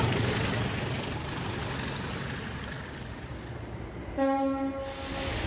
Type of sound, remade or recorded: recorded